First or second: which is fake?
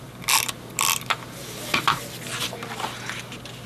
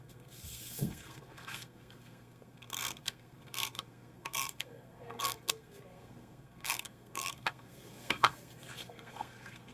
second